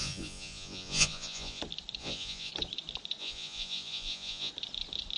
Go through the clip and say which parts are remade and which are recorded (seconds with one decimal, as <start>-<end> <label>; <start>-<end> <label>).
0.0-1.6 remade; 1.6-2.0 recorded; 2.0-2.5 remade; 2.5-3.2 recorded; 3.2-4.5 remade; 4.5-5.2 recorded